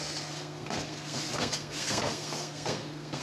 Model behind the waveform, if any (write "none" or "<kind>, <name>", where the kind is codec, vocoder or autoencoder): codec, SNAC